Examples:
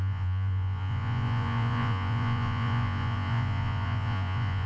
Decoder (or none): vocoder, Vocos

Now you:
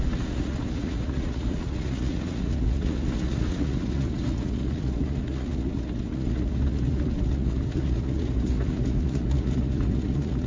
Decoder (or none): vocoder, Vocos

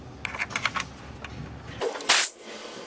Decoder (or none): none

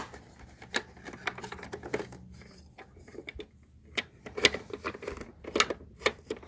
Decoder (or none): none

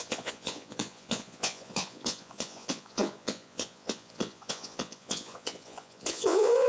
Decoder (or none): vocoder, Vocos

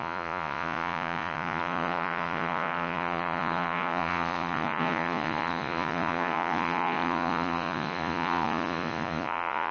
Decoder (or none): vocoder, Vocos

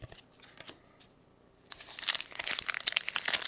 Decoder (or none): none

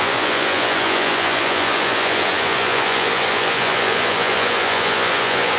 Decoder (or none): vocoder, Vocos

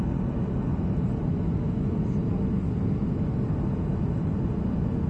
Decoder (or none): none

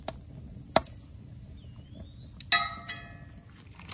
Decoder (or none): none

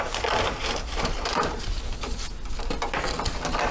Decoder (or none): none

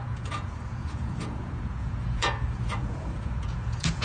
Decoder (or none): vocoder, Vocos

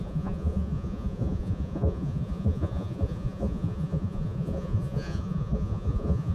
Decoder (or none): vocoder, Vocos